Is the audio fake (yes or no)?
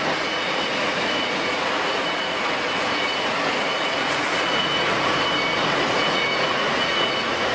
yes